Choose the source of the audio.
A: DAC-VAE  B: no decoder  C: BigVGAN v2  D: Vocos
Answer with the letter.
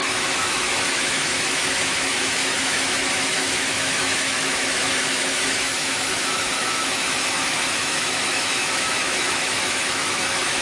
A